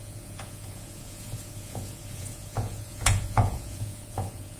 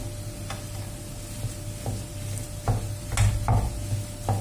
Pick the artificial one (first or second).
first